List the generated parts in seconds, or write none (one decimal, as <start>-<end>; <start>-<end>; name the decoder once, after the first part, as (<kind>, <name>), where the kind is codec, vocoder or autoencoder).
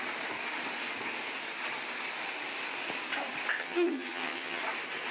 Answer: 3.6-4.6 (vocoder, HiFi-GAN)